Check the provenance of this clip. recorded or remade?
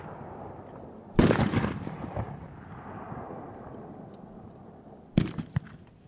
remade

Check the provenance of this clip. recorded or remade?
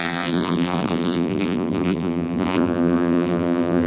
remade